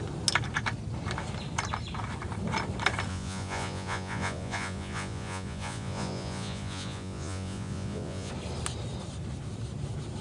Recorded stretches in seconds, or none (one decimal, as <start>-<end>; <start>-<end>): 0.0-3.1; 8.3-10.2